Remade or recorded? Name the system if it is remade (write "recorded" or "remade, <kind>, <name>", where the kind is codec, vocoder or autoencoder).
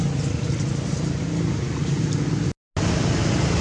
recorded